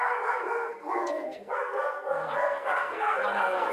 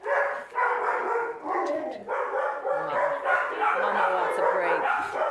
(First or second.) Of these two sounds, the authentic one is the second